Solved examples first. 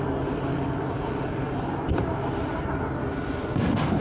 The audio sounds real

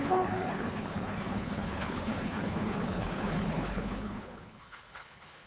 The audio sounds fake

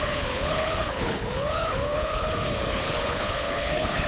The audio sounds fake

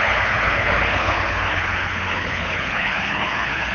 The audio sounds fake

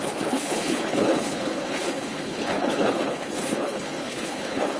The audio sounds fake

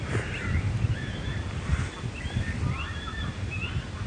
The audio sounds real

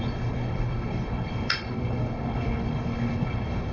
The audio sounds fake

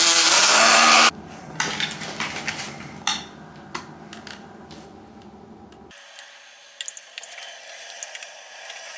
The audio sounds real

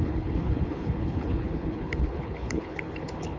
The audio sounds fake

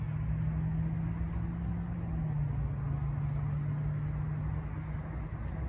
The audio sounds real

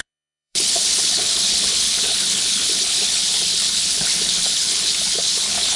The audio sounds fake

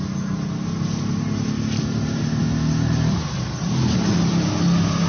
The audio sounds real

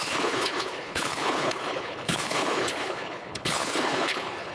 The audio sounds fake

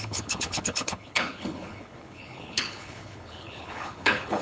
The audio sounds fake